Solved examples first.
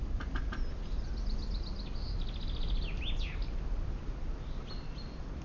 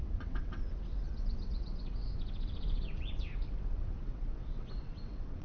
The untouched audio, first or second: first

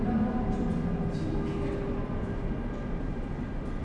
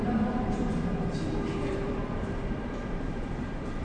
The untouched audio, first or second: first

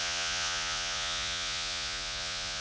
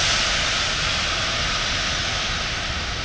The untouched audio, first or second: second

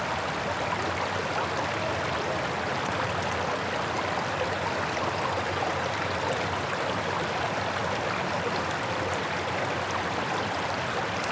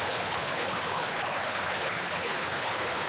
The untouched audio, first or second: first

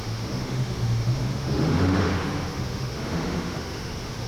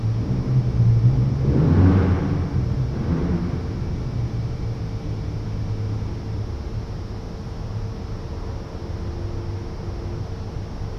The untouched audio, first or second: second